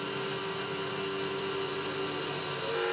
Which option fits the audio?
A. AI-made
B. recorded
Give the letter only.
B